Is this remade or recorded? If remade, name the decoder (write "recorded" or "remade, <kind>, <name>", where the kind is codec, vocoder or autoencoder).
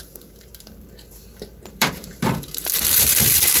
remade, vocoder, BigVGAN v2